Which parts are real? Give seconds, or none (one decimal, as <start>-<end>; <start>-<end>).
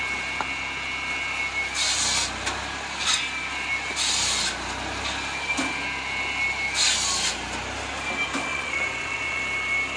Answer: 0.0-8.5; 9.4-10.0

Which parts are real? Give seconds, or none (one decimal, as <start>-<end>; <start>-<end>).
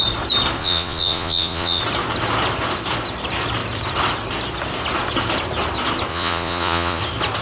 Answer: 0.0-0.6; 1.8-6.1; 7.0-7.4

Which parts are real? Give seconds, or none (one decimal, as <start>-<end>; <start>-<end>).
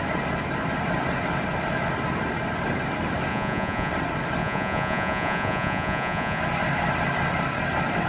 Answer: 0.0-3.3; 3.9-4.4; 6.4-8.1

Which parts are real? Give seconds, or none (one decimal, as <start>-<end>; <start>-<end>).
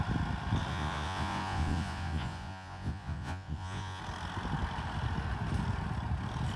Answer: 0.0-0.7; 4.0-6.6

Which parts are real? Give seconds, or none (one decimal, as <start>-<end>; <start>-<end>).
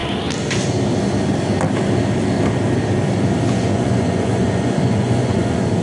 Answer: 0.0-3.5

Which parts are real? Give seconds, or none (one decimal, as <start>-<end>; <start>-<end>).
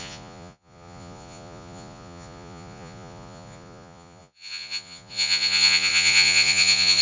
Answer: none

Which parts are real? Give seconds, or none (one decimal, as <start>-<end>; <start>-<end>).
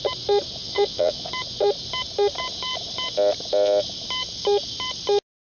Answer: 0.0-0.6; 1.3-5.5